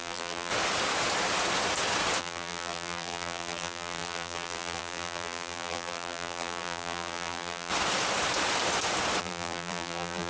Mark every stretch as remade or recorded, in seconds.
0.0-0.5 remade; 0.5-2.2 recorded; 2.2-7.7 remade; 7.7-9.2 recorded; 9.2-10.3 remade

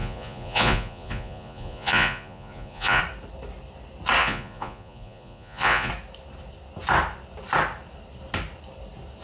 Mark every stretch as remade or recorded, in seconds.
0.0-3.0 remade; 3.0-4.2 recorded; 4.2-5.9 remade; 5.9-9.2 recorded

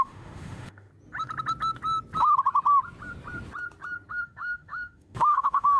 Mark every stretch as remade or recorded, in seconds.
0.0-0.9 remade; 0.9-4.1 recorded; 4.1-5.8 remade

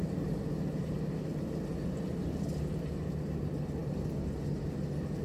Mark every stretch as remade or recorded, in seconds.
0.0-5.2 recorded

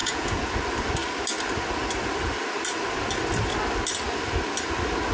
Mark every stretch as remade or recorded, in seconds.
0.0-0.5 remade; 0.5-5.1 recorded

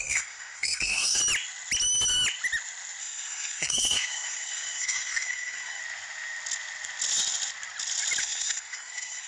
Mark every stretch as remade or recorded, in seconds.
0.0-1.2 remade; 1.2-3.0 recorded; 3.0-5.8 remade; 5.8-8.2 recorded; 8.2-9.3 remade

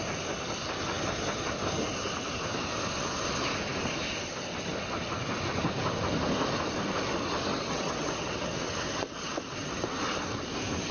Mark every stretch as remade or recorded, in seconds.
0.0-7.5 recorded; 7.5-10.0 remade; 10.0-10.9 recorded